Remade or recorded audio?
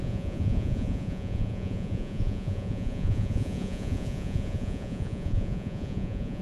remade